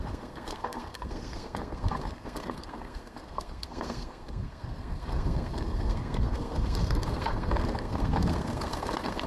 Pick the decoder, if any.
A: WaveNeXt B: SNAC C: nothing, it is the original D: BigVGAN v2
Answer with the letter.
B